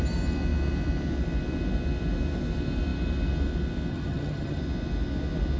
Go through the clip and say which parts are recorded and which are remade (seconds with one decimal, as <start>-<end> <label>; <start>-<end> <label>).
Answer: 0.0-3.9 recorded; 3.9-4.6 remade; 4.6-5.6 recorded